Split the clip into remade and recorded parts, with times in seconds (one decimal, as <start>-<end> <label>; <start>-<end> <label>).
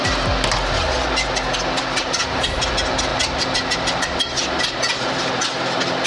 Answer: 0.0-6.1 recorded